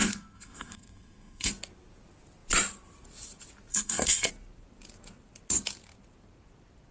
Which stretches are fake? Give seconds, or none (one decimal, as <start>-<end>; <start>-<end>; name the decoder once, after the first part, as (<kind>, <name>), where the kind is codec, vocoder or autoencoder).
0.0-1.5 (codec, SNAC); 3.7-4.3